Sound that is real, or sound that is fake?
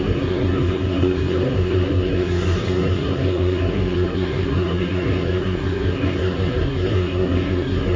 fake